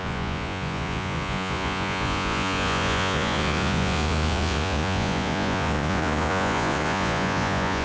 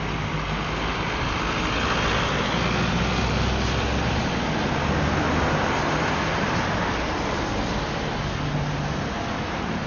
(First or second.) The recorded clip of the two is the second